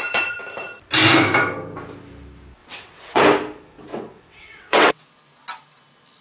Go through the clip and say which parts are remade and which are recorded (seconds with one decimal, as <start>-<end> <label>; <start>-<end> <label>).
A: 0.0-2.6 recorded; 2.6-3.2 remade; 3.2-3.9 recorded; 3.9-5.1 remade; 5.1-6.2 recorded